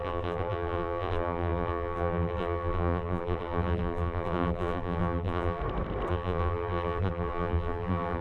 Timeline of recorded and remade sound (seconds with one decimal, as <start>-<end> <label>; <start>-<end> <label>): 0.0-5.6 remade; 5.6-6.1 recorded; 6.1-8.2 remade